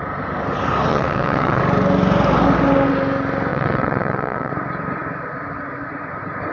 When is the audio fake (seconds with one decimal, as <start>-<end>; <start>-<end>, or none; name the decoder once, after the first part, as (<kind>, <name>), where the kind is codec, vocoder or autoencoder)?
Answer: 0.9-1.6 (vocoder, WaveNeXt); 3.5-4.5